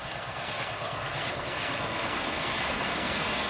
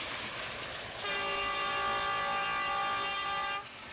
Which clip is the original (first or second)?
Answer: second